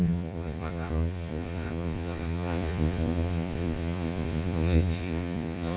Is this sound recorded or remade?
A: remade